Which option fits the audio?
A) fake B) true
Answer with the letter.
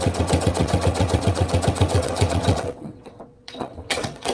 A